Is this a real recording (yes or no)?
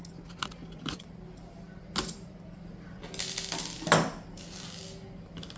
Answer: yes